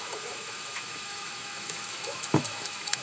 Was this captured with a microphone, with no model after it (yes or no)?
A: no